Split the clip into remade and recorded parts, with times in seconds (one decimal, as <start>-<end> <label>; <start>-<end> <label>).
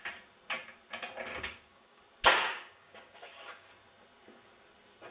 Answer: 0.0-1.3 recorded; 1.3-2.0 remade; 2.0-2.5 recorded; 2.5-3.7 remade; 3.7-5.1 recorded